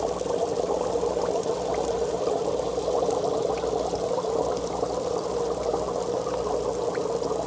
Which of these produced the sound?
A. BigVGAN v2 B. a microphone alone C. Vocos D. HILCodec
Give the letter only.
B